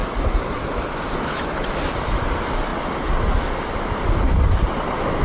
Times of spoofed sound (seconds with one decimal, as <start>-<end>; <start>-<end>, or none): none